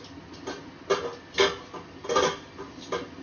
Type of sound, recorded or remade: recorded